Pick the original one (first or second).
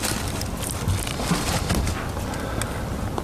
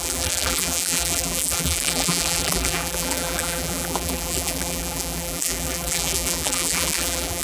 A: first